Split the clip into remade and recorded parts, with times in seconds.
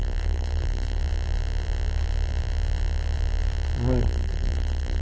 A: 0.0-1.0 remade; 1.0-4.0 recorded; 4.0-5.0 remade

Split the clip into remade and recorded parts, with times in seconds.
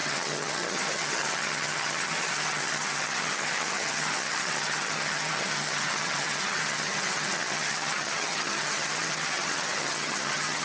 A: 0.0-10.6 remade